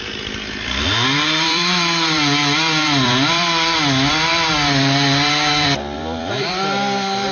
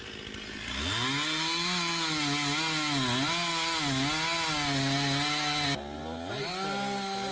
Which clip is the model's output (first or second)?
first